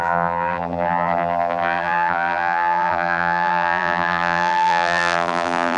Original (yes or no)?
no